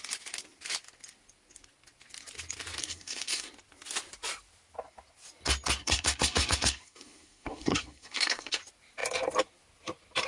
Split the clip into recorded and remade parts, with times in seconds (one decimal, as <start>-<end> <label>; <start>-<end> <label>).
0.0-2.8 recorded; 2.8-3.5 remade; 3.5-5.8 recorded; 5.8-8.6 remade; 8.6-10.3 recorded

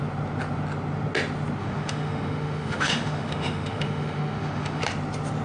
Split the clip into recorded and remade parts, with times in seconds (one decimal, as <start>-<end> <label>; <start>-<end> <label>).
0.0-1.6 recorded; 1.6-4.8 remade; 4.8-5.4 recorded

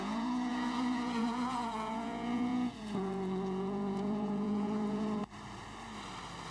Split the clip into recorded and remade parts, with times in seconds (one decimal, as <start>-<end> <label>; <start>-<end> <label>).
0.0-5.2 remade; 5.2-6.5 recorded